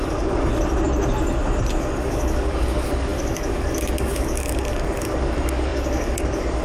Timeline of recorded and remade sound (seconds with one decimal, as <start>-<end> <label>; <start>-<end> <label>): 0.0-0.5 remade; 0.5-1.8 recorded; 1.8-6.6 remade